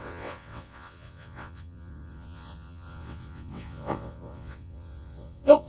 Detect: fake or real fake